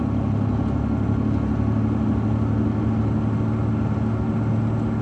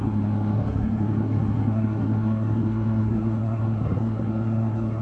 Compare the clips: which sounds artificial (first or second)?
second